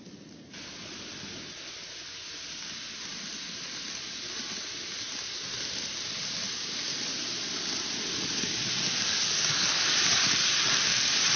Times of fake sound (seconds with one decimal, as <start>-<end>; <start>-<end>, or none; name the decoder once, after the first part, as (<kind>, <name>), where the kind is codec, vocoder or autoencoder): none